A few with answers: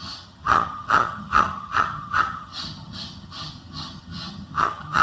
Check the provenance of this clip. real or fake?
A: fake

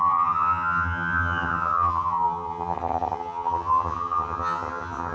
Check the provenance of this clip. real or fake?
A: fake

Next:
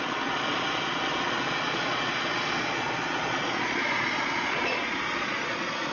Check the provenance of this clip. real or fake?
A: fake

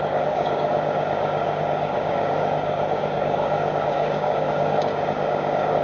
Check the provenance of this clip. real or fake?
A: fake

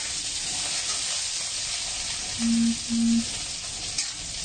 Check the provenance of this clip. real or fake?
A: real